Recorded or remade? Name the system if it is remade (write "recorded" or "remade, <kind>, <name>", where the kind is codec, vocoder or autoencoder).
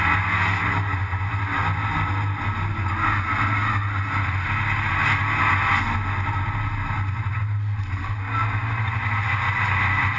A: recorded